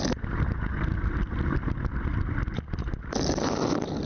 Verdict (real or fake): real